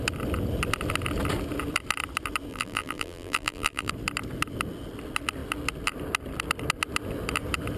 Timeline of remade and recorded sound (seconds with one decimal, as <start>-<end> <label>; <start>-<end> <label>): 0.0-2.5 recorded; 2.5-3.9 remade; 3.9-7.8 recorded